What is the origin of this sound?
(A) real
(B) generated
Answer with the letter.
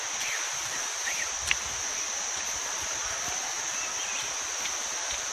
A